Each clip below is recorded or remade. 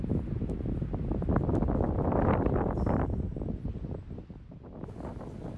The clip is recorded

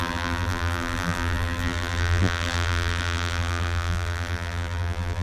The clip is remade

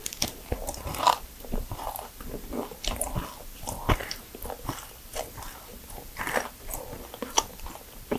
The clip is remade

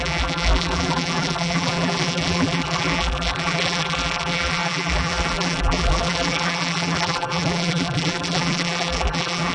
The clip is remade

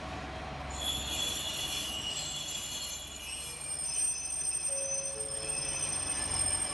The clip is recorded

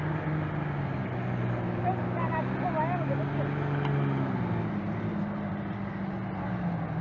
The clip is recorded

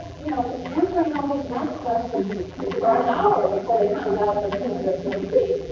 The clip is remade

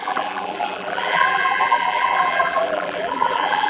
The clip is remade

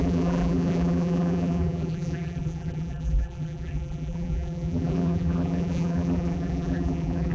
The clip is remade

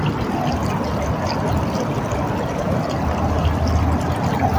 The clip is recorded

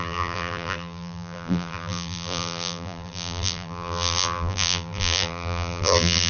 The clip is remade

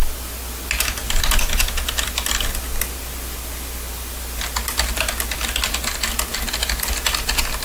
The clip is recorded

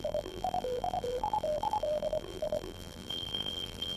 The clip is remade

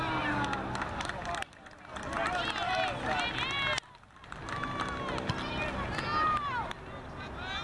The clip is recorded